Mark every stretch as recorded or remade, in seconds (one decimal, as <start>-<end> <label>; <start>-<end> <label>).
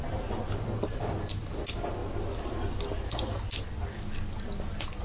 0.0-5.0 recorded